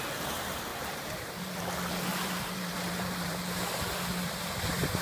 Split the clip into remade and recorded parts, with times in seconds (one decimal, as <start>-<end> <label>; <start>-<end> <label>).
0.0-0.7 recorded; 0.7-1.6 remade; 1.6-2.1 recorded; 2.1-3.4 remade; 3.4-5.0 recorded